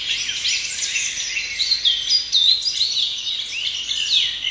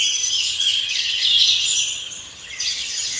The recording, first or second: first